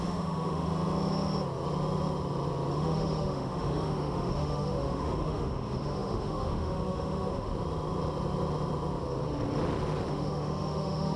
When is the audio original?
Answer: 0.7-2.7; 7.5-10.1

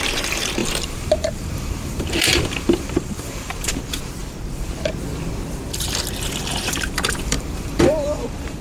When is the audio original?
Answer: 0.0-0.6; 3.7-4.2; 4.7-6.4

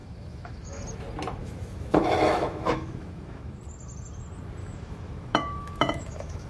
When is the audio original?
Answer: 0.8-1.4; 3.6-4.6